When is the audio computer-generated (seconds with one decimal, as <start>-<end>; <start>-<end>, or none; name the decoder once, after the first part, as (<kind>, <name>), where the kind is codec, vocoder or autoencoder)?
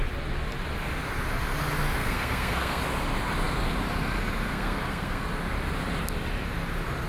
2.0-2.8 (codec, SNAC); 4.5-5.2